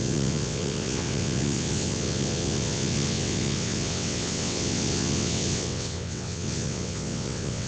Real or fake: fake